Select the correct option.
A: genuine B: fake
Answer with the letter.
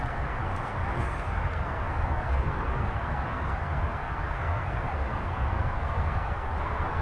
B